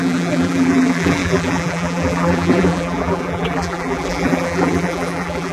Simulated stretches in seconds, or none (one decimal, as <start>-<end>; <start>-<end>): 0.0-5.5